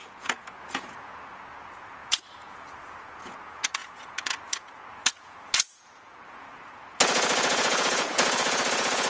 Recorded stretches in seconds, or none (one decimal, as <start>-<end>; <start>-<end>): none